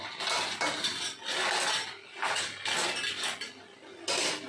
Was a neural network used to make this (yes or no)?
no